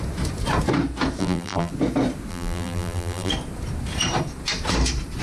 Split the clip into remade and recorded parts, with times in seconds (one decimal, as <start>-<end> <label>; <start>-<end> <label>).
0.0-1.2 recorded; 1.2-1.7 remade; 1.7-2.3 recorded; 2.3-3.3 remade; 3.3-5.2 recorded